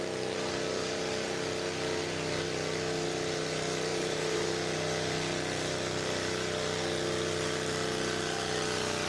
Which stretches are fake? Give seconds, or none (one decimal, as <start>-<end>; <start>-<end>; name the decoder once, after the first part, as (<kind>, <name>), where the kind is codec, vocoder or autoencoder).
3.9-4.5 (vocoder, BigVGAN v2)